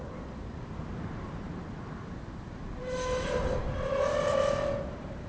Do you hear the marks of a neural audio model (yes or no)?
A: yes